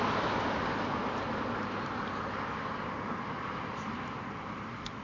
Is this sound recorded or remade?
recorded